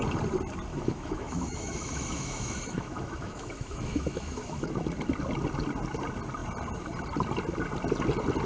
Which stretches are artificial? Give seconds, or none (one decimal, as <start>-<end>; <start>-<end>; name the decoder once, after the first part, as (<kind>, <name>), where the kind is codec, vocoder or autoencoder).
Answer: 0.7-4.9 (autoencoder, DAC-VAE)